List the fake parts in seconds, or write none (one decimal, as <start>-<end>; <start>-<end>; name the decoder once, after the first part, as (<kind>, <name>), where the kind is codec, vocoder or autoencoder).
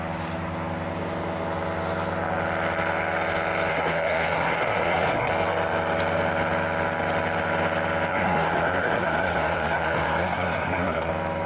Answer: 3.7-5.3 (codec, SNAC); 8.1-11.1